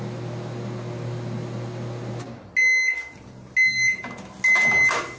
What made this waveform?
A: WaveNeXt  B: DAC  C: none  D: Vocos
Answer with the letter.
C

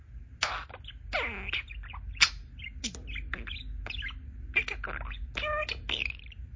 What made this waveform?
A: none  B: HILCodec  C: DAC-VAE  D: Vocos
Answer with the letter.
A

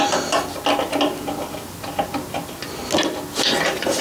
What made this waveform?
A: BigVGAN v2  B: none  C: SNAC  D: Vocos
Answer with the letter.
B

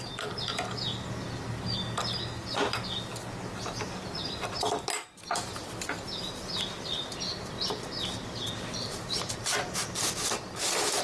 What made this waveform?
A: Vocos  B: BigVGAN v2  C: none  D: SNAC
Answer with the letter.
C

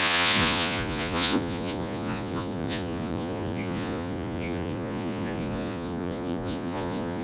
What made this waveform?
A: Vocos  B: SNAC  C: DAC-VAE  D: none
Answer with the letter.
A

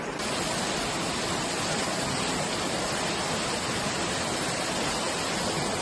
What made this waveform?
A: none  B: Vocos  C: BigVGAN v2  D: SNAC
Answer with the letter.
A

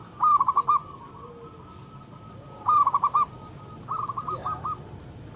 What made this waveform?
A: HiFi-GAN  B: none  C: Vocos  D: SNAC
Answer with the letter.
B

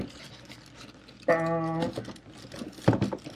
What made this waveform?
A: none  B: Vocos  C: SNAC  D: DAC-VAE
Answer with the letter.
A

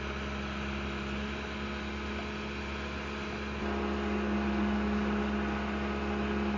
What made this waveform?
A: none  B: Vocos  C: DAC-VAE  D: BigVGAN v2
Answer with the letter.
A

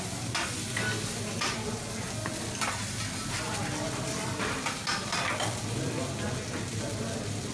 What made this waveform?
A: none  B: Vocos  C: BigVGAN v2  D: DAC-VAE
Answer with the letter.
A